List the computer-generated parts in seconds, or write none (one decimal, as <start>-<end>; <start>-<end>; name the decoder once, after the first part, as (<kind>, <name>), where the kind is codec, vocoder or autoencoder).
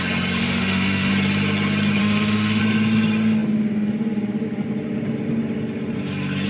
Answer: 0.4-1.1 (autoencoder, DAC-VAE); 2.0-2.6